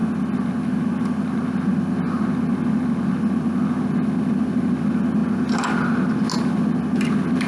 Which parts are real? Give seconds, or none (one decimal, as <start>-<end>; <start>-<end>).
0.0-7.5